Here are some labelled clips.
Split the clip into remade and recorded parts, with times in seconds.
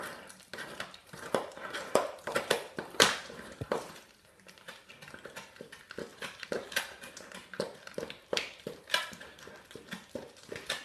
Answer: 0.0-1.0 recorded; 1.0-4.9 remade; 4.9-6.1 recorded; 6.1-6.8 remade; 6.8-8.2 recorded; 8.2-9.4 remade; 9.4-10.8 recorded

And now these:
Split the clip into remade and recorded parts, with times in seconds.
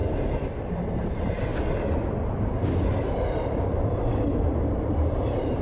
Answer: 0.0-0.7 recorded; 0.7-1.5 remade; 1.5-3.3 recorded; 3.3-5.6 remade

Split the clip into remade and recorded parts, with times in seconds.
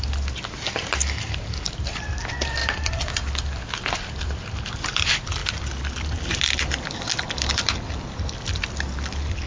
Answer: 0.0-2.6 recorded; 2.6-4.9 remade; 4.9-5.4 recorded; 5.4-7.6 remade; 7.6-9.5 recorded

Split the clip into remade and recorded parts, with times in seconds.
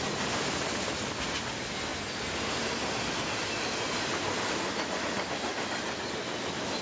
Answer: 0.0-6.8 recorded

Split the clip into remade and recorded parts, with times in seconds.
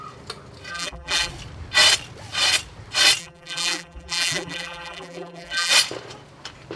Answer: 0.0-0.7 recorded; 0.7-1.3 remade; 1.3-3.2 recorded; 3.2-5.7 remade; 5.7-6.8 recorded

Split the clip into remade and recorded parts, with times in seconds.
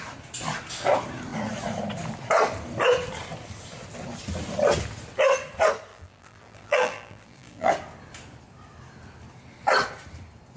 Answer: 0.0-5.9 recorded; 5.9-7.7 remade; 7.7-10.6 recorded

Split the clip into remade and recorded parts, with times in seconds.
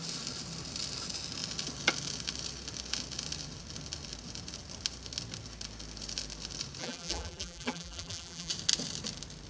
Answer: 0.0-6.8 recorded; 6.8-8.5 remade; 8.5-9.5 recorded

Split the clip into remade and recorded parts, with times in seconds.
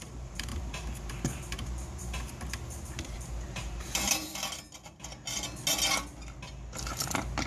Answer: 0.0-4.3 remade; 4.3-7.5 recorded